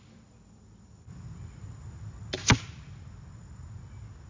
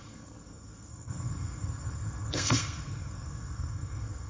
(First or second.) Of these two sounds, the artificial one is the second